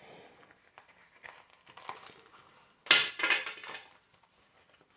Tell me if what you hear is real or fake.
real